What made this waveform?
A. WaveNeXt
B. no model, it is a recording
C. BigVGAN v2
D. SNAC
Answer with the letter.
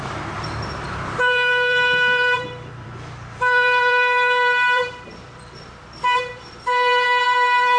C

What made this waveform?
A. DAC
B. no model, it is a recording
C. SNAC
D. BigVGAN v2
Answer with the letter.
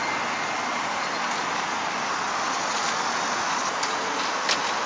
B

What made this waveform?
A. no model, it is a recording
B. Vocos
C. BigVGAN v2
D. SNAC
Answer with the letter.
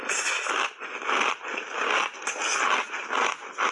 A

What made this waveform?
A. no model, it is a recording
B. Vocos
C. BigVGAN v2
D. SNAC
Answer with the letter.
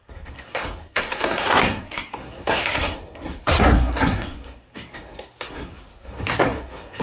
D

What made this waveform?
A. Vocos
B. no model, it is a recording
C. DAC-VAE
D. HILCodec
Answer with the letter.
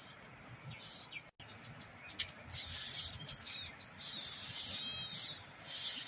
B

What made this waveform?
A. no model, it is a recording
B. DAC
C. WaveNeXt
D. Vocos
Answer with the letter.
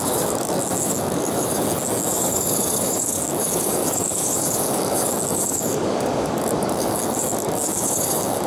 B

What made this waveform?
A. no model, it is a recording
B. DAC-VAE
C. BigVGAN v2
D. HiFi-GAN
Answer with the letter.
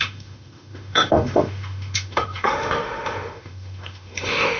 B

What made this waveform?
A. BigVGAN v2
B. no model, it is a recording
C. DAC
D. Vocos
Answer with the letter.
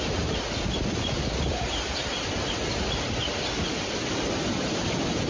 B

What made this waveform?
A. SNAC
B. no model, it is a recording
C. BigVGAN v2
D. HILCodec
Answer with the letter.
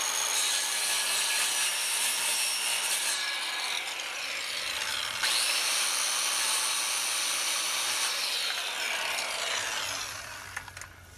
B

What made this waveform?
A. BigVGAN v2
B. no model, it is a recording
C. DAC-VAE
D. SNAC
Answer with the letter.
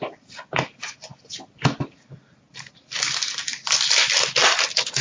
B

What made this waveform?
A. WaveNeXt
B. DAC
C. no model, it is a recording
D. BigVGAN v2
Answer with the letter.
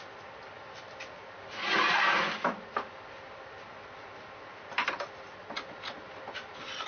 C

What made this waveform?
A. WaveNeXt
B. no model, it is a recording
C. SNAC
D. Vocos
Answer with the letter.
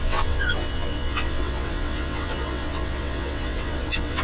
A